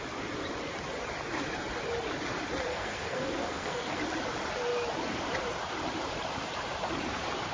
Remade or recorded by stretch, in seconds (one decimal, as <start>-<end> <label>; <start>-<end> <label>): 0.0-2.7 recorded; 2.7-4.0 remade; 4.0-7.5 recorded

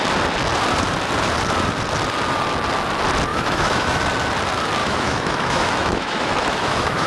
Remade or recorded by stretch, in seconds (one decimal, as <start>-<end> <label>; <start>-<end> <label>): 0.0-3.3 recorded; 3.3-4.0 remade; 4.0-4.8 recorded; 4.8-7.1 remade

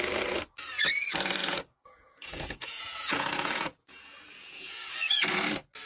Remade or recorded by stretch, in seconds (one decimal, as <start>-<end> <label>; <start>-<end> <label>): 0.0-1.4 recorded; 1.4-4.9 remade; 4.9-5.9 recorded

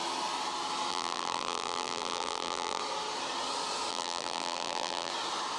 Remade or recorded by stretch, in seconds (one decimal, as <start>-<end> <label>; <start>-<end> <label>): 0.0-0.9 recorded; 0.9-2.8 remade; 2.8-3.9 recorded; 3.9-5.1 remade; 5.1-5.6 recorded

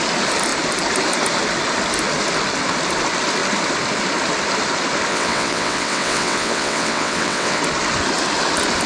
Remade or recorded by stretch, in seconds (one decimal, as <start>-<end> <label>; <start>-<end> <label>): 0.0-5.1 recorded; 5.1-7.6 remade; 7.6-8.9 recorded

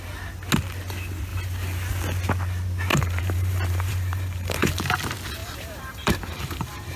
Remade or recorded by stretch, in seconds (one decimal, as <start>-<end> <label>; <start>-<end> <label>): 0.0-2.9 recorded; 2.9-4.8 remade; 4.8-5.4 recorded; 5.4-7.0 remade

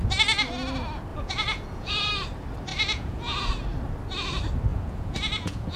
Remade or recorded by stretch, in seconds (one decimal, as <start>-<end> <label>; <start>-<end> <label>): 0.0-1.1 recorded; 1.1-2.1 remade; 2.1-2.7 recorded; 2.7-3.4 remade; 3.4-4.7 recorded; 4.7-5.8 remade

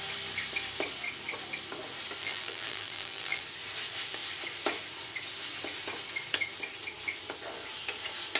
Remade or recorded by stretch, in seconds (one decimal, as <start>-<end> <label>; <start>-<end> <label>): 0.0-2.2 recorded; 2.2-3.4 remade; 3.4-8.4 recorded